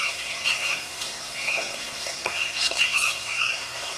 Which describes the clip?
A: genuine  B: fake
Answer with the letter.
B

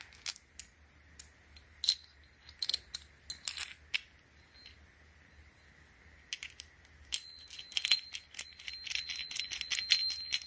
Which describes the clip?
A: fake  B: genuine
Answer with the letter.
B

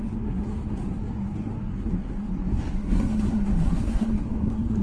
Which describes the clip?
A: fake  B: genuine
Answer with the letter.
A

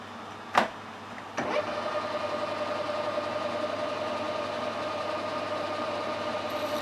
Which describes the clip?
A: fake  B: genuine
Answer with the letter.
B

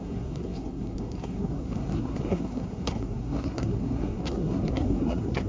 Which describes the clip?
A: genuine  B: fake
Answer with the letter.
B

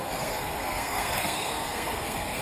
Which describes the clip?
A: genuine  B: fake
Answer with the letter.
B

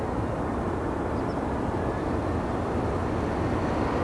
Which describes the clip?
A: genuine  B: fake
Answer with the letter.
A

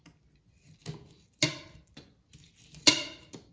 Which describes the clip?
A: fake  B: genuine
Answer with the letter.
B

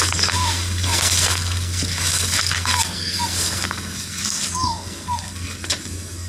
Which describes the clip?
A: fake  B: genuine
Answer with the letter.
A